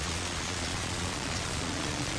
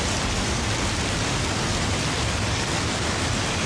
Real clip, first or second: second